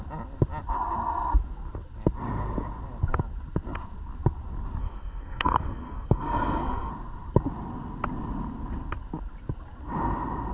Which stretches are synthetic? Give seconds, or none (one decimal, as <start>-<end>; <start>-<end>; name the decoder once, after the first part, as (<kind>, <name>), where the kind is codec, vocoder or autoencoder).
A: 4.8-6.9 (codec, SNAC)